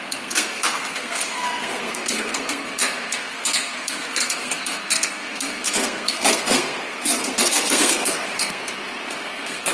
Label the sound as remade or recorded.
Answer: remade